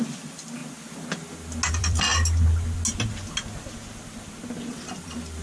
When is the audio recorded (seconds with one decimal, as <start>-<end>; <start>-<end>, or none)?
0.6-1.7; 2.1-4.7